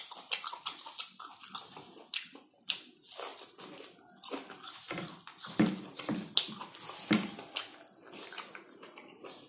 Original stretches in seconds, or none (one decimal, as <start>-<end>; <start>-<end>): 0.0-9.5